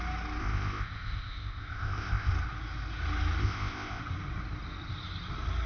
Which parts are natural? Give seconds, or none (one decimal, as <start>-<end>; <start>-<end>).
0.0-0.4; 2.3-3.4; 4.0-5.7

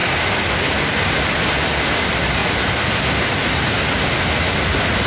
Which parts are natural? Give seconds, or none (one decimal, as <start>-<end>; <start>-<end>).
0.0-2.4; 3.7-5.1

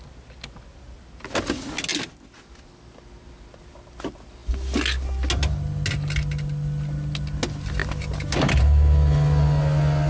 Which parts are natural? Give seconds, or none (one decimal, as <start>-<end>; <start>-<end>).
0.0-10.1

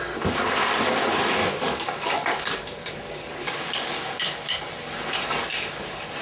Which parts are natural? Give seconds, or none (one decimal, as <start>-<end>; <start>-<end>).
0.0-1.4; 4.7-6.2

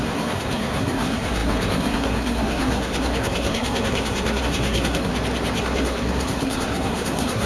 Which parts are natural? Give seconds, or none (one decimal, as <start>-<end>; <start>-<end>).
5.1-5.6

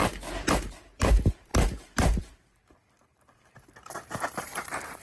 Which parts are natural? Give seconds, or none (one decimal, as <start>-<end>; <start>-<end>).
0.0-0.5

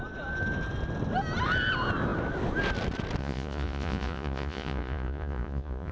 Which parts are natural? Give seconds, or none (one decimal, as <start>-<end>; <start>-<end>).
0.0-3.2